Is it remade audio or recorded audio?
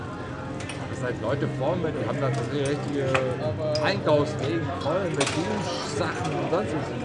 recorded